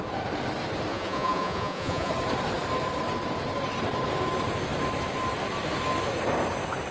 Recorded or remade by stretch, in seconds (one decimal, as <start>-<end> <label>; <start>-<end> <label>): 0.0-0.9 recorded; 0.9-2.1 remade; 2.1-6.9 recorded